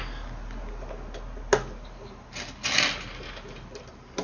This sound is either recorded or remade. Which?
recorded